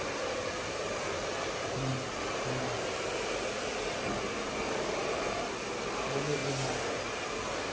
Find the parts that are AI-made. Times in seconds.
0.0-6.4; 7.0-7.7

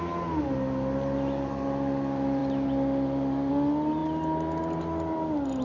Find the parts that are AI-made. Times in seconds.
none

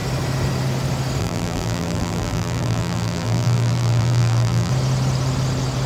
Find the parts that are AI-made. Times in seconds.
1.2-4.7

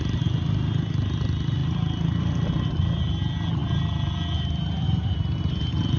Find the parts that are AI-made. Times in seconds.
none

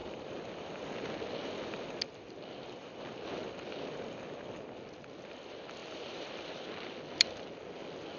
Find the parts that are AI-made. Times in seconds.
none

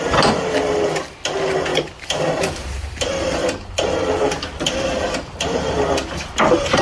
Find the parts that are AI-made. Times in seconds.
1.7-5.8

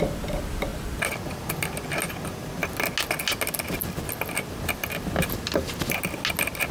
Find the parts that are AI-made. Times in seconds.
none

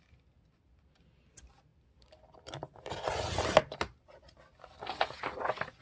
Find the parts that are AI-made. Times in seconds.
none